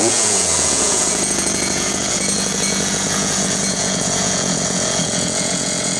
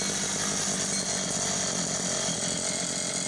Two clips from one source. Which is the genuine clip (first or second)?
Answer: second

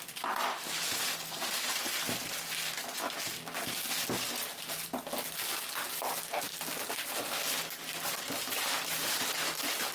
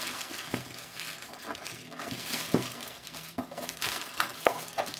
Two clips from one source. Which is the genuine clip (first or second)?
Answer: first